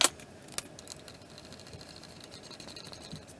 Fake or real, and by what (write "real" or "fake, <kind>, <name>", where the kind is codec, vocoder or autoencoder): real